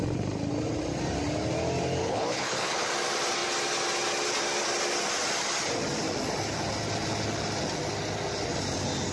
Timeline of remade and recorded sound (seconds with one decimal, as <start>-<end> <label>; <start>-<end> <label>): 0.0-2.0 recorded; 2.0-2.9 remade; 2.9-9.1 recorded